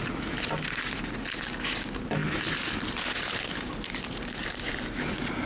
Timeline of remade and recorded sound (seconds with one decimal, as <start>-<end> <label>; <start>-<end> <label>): 0.0-5.5 recorded